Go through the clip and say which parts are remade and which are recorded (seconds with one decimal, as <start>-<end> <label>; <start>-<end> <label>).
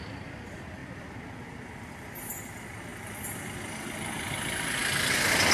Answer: 0.0-5.5 recorded